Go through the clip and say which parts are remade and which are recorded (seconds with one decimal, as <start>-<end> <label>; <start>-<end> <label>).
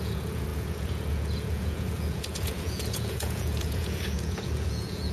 0.0-5.1 remade